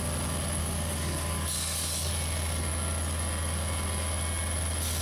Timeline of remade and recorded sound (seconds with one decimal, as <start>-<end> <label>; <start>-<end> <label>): 0.0-0.6 recorded; 0.6-2.1 remade; 2.1-5.0 recorded